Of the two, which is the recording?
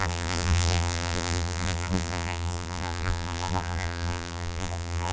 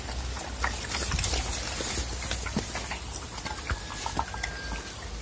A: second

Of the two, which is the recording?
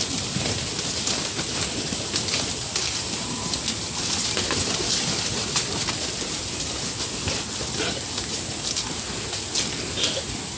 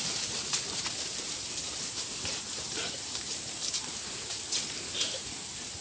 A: first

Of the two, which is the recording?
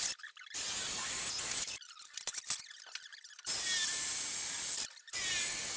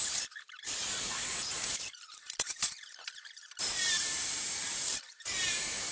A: first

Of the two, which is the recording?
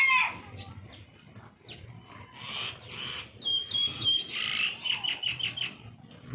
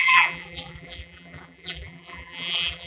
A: first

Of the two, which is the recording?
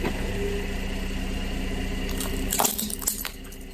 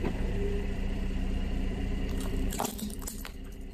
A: first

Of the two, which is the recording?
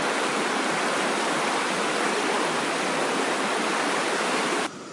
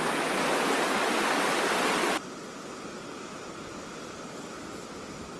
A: second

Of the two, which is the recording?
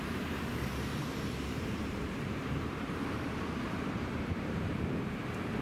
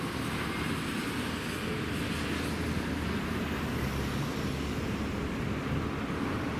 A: second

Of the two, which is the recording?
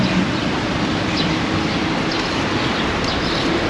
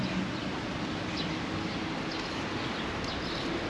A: second